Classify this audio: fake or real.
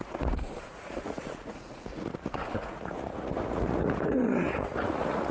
fake